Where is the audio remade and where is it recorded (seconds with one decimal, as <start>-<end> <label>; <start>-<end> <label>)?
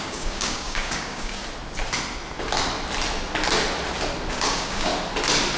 0.0-1.4 remade; 1.4-4.3 recorded; 4.3-4.9 remade; 4.9-5.6 recorded